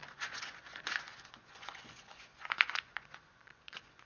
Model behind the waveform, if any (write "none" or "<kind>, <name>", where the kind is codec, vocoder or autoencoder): vocoder, Vocos